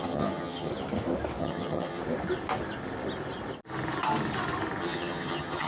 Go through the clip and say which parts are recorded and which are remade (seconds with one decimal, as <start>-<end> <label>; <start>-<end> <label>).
0.0-0.7 remade; 0.7-1.4 recorded; 1.4-2.0 remade; 2.0-4.8 recorded; 4.8-5.7 remade